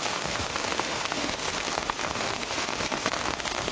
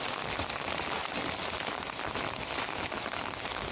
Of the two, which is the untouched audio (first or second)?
second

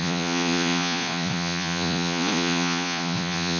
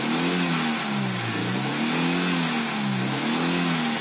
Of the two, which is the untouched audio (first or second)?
second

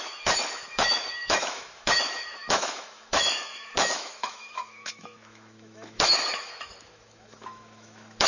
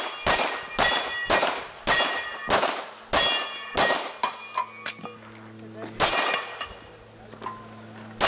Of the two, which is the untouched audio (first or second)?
second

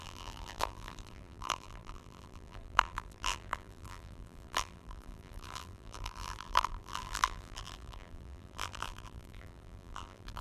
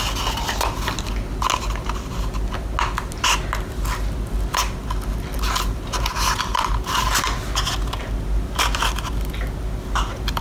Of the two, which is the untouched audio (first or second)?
second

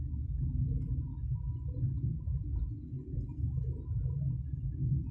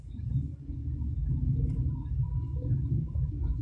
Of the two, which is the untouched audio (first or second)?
first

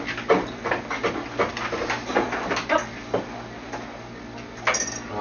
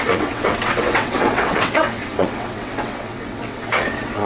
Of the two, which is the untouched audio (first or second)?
first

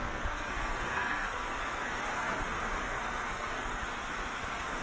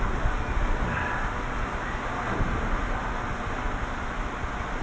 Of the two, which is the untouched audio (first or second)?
second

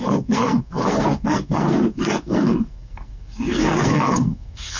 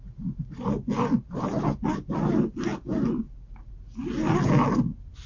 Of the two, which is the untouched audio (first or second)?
second